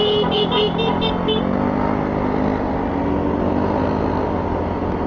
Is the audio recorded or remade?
recorded